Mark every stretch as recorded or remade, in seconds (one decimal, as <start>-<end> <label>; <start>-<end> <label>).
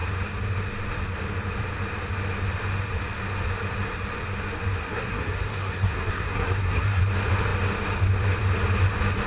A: 0.0-4.8 recorded; 4.8-7.0 remade; 7.0-9.3 recorded